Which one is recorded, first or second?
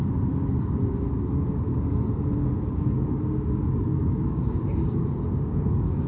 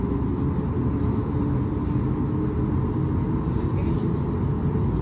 second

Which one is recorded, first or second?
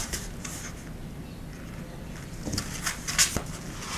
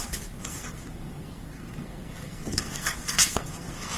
first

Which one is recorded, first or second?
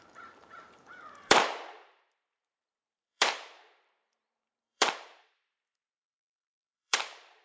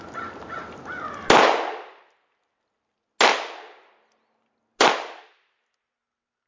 second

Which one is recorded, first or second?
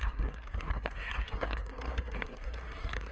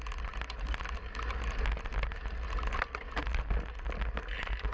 second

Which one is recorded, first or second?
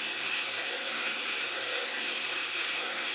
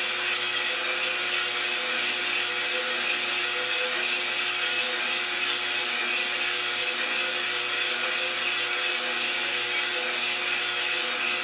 second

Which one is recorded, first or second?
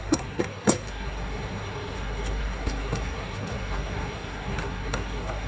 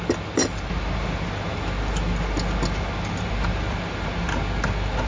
second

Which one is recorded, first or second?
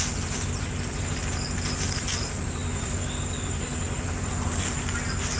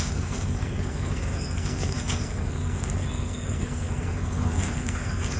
first